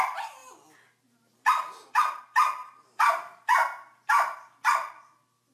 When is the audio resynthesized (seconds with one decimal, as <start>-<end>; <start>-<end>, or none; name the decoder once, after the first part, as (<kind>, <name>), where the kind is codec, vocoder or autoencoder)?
2.6-4.5 (vocoder, BigVGAN v2)